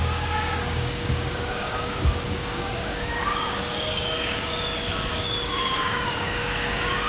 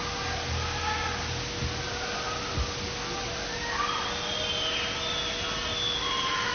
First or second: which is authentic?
second